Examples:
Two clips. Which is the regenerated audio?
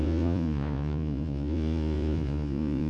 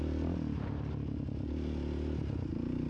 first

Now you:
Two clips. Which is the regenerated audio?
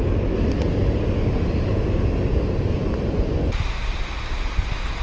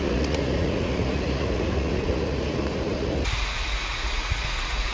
second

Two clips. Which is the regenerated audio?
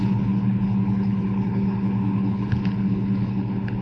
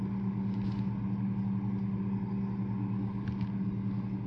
first